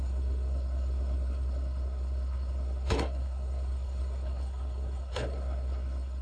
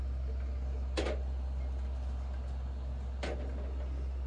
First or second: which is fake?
first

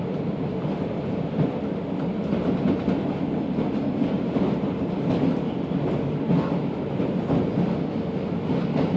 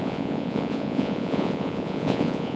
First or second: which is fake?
second